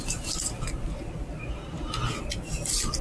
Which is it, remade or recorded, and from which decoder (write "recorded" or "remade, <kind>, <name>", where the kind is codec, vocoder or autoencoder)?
remade, vocoder, BigVGAN v2